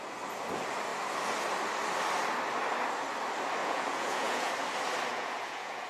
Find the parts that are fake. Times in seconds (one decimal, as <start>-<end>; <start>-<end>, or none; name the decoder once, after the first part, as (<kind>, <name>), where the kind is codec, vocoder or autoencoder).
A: 3.6-4.5 (vocoder, Vocos); 5.1-5.9